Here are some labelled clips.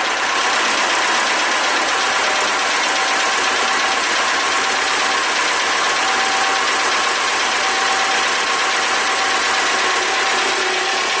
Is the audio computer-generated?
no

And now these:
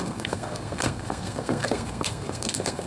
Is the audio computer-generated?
yes